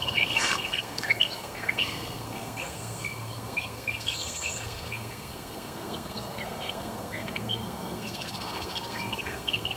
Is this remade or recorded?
remade